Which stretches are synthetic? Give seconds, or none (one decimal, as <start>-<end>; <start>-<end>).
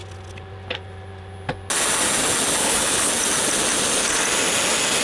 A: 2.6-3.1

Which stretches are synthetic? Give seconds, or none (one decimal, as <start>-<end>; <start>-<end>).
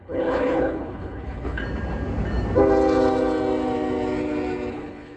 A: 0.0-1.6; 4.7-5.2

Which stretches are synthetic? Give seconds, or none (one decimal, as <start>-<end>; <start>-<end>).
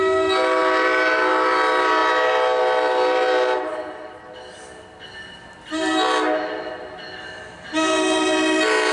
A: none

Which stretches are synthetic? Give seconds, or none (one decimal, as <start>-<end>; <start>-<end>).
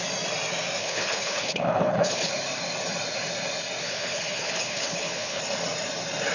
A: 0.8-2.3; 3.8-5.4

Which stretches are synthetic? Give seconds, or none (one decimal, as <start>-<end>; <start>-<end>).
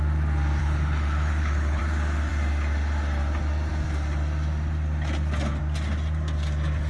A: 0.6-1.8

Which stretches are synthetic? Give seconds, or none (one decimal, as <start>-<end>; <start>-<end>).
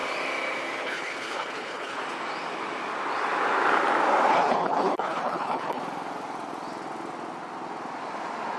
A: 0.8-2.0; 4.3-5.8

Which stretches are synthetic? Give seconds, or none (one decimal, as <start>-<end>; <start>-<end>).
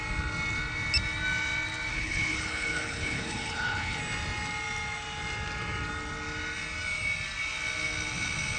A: 1.9-4.0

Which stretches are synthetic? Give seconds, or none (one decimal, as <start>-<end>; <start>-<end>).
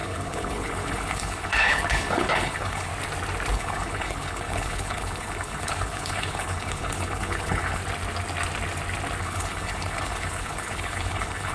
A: 0.0-2.9; 3.5-7.8; 9.2-11.5